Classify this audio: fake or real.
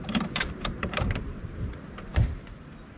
fake